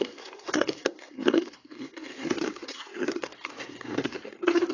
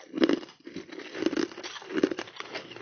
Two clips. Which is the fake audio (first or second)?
first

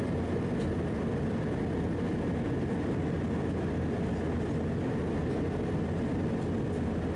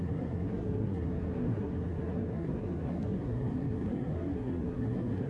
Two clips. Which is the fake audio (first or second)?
second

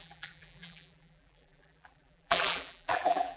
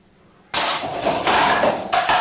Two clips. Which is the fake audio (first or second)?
first